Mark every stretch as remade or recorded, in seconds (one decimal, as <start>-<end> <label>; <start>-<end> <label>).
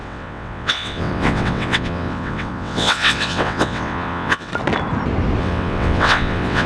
0.0-4.5 remade; 4.5-5.4 recorded; 5.4-6.7 remade